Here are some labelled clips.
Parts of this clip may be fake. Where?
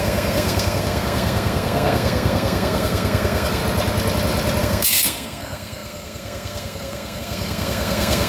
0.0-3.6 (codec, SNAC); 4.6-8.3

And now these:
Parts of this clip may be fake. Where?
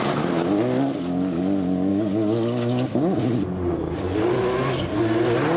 1.9-3.2 (codec, DAC)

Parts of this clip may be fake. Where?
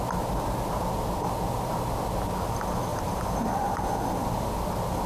2.9-3.9 (vocoder, BigVGAN v2)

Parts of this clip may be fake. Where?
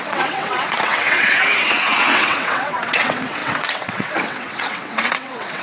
0.0-5.6 (vocoder, WaveNeXt)